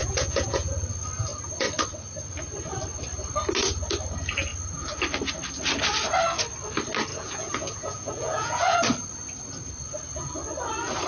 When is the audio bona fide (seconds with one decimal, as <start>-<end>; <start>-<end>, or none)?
0.7-7.1; 8.8-11.1